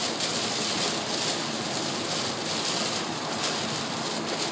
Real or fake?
real